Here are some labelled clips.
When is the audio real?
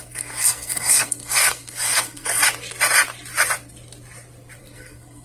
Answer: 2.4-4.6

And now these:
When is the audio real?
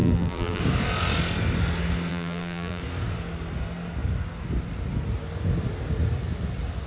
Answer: 0.6-2.1; 2.8-6.9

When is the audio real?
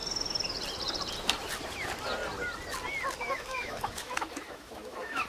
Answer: 0.0-3.2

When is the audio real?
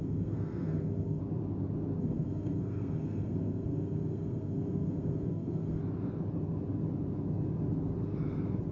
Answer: 1.2-2.0; 5.8-8.7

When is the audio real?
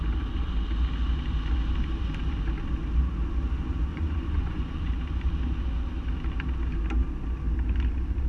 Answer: 0.0-3.9; 4.9-8.3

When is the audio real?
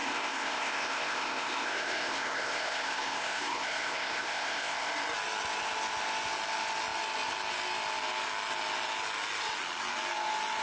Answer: 4.9-10.6